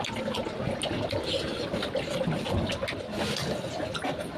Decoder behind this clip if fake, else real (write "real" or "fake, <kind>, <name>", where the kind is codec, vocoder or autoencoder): real